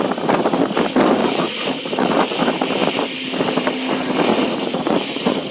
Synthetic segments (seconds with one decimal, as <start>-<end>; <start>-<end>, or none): 1.2-2.4; 4.3-5.5